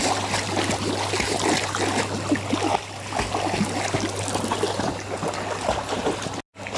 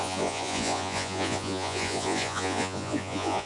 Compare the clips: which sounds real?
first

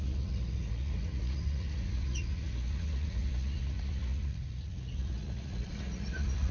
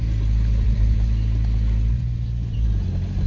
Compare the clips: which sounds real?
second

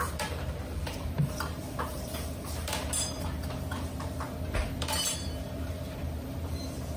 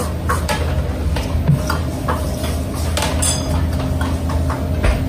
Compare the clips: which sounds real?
second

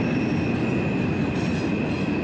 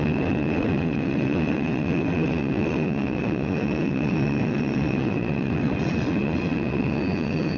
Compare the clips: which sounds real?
first